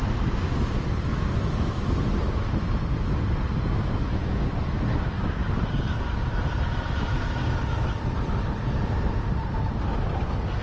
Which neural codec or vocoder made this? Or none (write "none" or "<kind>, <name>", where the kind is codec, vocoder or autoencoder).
none